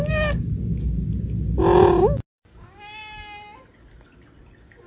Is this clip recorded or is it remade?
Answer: recorded